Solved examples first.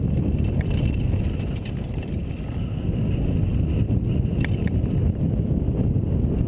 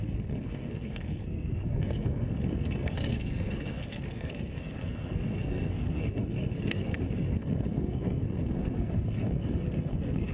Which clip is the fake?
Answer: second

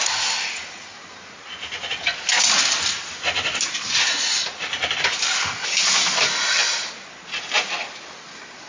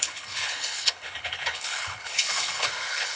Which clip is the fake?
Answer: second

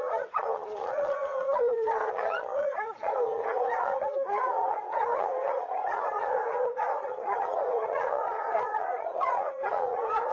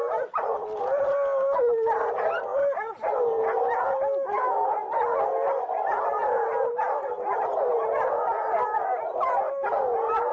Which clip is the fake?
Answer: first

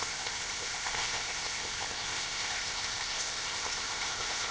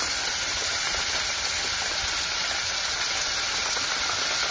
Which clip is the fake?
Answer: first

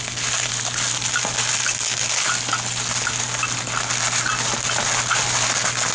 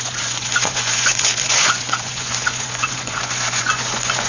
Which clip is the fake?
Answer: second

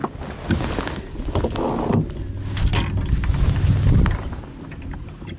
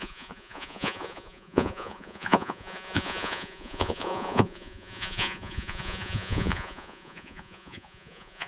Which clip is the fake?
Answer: second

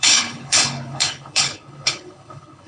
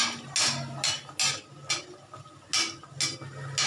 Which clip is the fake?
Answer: first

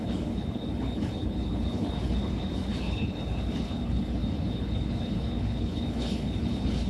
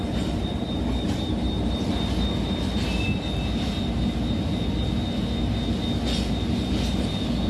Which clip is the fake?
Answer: first